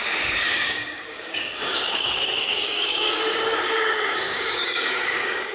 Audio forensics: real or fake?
fake